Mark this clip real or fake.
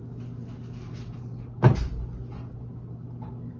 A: real